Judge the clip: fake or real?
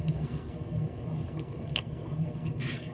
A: fake